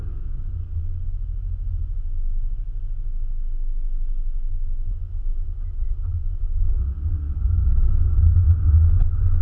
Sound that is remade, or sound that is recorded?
recorded